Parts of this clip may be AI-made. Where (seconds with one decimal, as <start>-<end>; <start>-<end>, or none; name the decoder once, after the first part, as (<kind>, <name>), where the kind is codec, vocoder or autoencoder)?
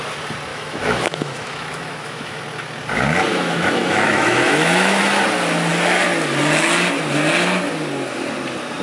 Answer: 0.5-2.4 (autoencoder, DAC-VAE); 3.3-5.0